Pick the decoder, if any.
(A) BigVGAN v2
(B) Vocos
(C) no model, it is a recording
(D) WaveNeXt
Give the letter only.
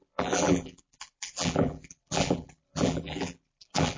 A